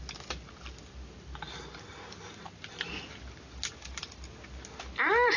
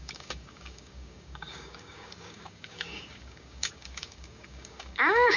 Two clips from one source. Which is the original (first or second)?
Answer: first